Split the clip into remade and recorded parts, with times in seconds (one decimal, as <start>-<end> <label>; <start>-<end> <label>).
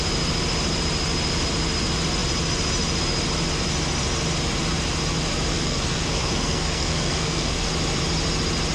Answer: 0.0-5.5 recorded; 5.5-7.7 remade; 7.7-8.7 recorded